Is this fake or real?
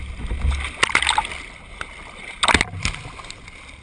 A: real